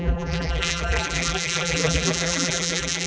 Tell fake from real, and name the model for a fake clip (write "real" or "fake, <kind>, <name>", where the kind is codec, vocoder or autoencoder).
fake, vocoder, BigVGAN v2